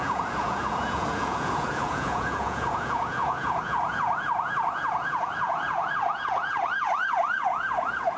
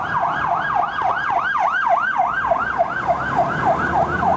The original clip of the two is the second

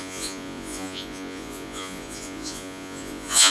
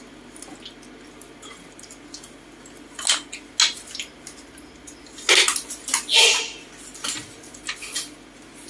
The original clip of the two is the second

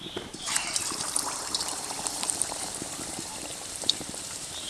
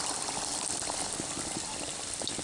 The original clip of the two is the second